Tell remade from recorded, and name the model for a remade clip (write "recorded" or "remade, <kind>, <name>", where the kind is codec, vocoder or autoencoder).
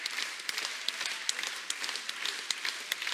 recorded